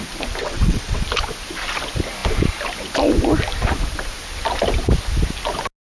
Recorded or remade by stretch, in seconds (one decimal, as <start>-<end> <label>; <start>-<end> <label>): 0.0-0.4 recorded; 0.4-1.0 remade; 1.0-5.9 recorded